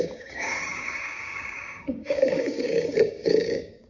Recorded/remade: remade